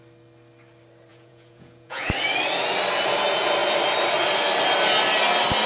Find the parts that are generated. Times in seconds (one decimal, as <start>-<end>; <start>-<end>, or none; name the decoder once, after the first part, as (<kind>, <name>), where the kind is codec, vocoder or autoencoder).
1.1-2.1 (vocoder, Vocos)

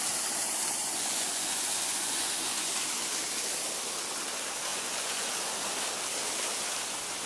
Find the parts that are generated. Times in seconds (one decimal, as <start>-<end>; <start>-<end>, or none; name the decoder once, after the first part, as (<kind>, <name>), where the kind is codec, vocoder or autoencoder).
0.8-2.7 (vocoder, Vocos); 4.7-5.3

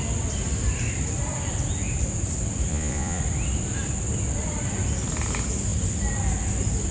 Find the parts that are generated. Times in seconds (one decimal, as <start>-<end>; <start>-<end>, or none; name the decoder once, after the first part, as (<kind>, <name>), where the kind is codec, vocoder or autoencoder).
2.7-3.2 (vocoder, Vocos)

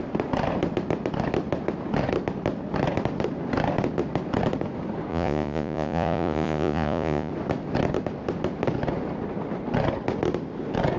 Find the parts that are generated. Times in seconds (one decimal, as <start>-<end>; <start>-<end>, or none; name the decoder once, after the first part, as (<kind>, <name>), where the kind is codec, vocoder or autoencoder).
5.1-7.3 (vocoder, Vocos)

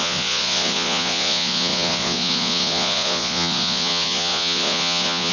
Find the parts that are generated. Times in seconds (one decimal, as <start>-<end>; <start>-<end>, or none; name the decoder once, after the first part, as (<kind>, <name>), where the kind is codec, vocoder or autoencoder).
0.0-5.3 (vocoder, Vocos)

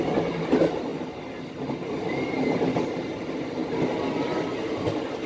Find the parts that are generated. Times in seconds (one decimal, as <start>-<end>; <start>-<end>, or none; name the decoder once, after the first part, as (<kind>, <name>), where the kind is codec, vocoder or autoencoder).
none